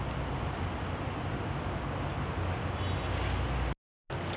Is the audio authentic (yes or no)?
yes